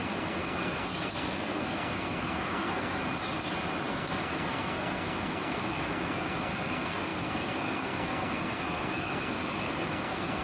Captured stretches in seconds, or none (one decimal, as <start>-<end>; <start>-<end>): 3.0-3.9